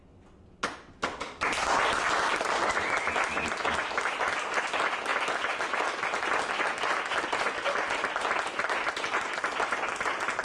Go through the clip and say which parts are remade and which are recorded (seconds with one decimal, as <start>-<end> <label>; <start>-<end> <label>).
0.0-10.4 recorded